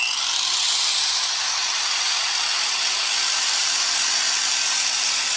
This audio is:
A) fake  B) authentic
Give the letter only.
B